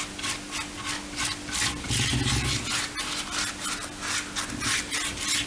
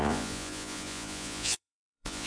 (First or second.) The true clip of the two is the first